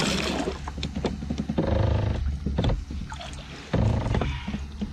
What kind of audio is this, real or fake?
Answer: real